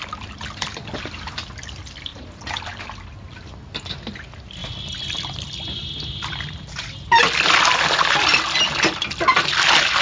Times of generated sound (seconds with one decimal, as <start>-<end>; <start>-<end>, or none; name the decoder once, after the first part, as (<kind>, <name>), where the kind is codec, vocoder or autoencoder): 2.1-2.8 (vocoder, BigVGAN v2); 4.6-7.2